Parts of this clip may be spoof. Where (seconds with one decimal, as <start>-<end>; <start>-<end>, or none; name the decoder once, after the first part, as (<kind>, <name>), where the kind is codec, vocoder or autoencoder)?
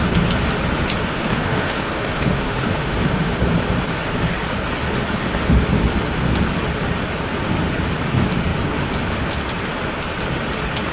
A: 1.1-3.3 (autoencoder, DAC-VAE)